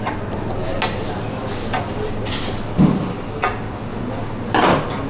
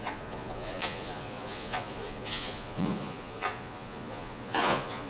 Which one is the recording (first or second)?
first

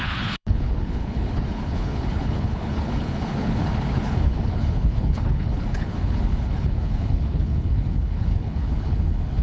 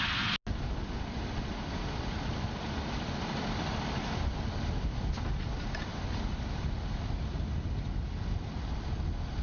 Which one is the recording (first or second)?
second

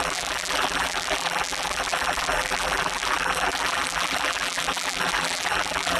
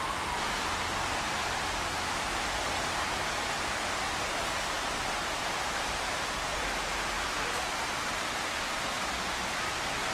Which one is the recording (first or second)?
second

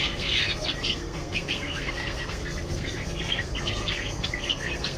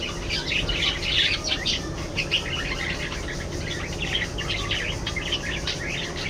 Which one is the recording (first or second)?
second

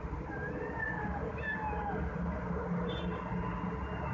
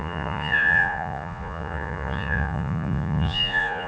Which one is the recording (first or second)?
first